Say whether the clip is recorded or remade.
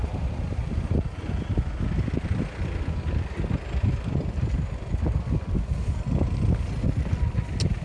recorded